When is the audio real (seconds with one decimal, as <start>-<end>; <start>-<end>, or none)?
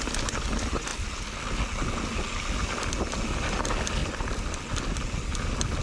0.0-5.8